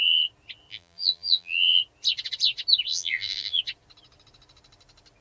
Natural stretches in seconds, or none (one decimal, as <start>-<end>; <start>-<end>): 0.0-0.7; 1.8-2.9; 3.6-5.2